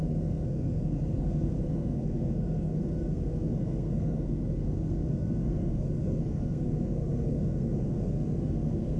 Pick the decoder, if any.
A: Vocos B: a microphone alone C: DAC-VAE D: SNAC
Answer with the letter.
D